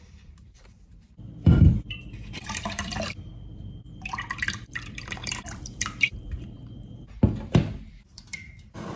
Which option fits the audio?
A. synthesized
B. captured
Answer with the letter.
A